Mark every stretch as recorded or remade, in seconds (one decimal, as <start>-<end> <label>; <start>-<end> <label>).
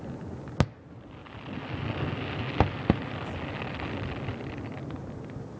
0.0-5.6 recorded